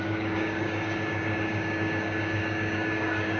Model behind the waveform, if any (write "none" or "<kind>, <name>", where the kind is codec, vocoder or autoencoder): codec, DAC